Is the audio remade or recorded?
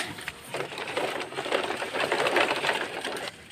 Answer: remade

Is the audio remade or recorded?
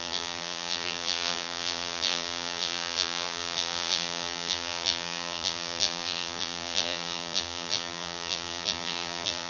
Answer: remade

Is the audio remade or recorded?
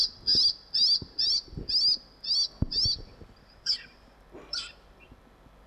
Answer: recorded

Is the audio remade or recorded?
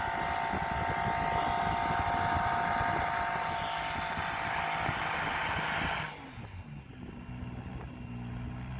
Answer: recorded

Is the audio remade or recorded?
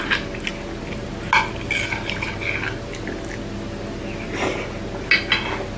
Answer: recorded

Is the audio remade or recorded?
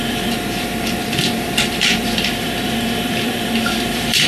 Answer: remade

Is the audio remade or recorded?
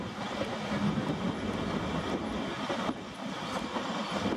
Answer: recorded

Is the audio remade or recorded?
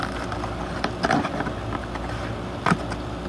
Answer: recorded